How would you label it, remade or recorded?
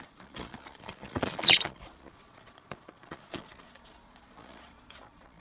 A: remade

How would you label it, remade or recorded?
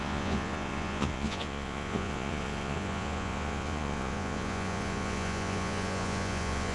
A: remade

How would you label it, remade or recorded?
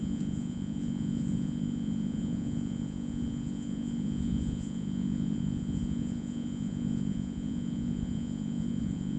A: remade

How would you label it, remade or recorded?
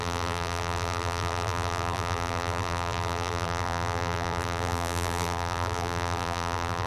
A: remade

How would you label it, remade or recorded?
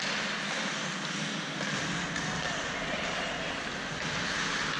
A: recorded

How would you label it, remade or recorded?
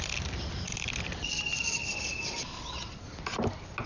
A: recorded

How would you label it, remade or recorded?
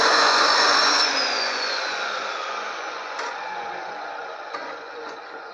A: remade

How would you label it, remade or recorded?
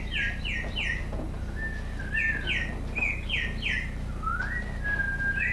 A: recorded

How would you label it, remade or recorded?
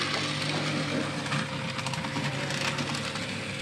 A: recorded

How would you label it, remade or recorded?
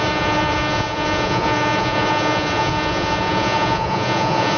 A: remade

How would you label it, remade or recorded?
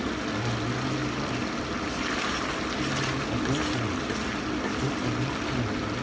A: recorded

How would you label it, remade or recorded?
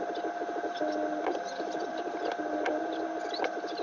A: recorded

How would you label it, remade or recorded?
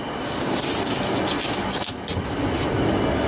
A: recorded